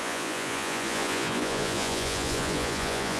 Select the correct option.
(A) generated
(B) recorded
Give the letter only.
A